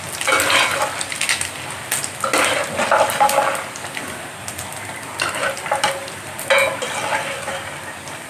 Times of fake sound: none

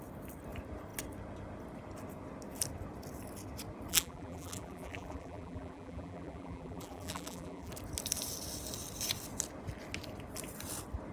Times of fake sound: 3.9-7.7 (vocoder, BigVGAN v2)

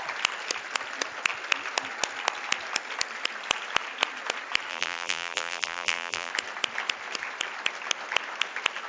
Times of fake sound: 4.7-6.3 (vocoder, BigVGAN v2)

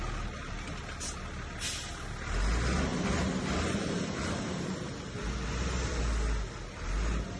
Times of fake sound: 2.9-6.0 (vocoder, BigVGAN v2)